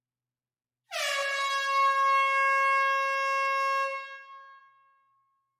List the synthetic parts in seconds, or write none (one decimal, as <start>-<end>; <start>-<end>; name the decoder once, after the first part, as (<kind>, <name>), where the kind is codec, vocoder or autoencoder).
none